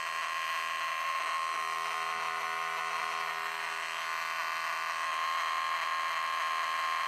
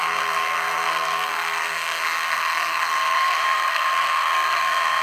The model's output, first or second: second